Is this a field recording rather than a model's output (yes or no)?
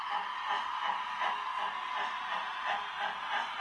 yes